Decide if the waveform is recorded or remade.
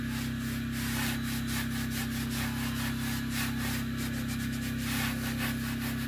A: recorded